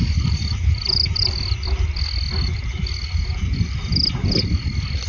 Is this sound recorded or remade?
recorded